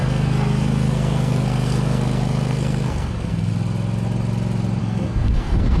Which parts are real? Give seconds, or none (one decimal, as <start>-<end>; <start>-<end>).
3.5-4.8